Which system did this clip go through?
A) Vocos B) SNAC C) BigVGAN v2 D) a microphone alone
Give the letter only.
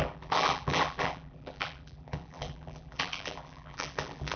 C